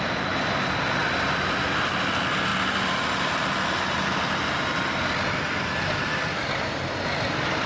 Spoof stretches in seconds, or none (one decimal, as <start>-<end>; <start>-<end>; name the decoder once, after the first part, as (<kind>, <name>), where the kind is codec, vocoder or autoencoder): none